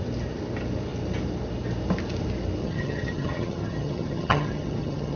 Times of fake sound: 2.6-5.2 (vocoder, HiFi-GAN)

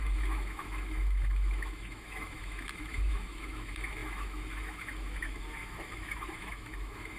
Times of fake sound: 0.0-7.2 (autoencoder, DAC-VAE)

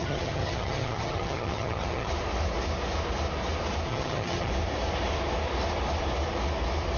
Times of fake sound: 0.0-2.1 (vocoder, HiFi-GAN); 3.9-4.5

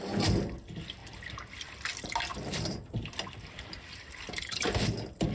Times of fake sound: none

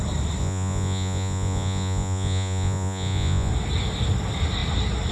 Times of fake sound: 0.4-3.5 (vocoder, Vocos)